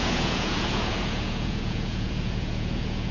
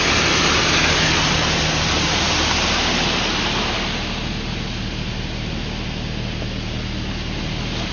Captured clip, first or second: second